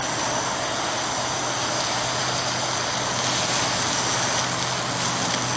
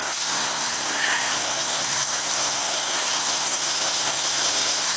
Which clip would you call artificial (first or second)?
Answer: second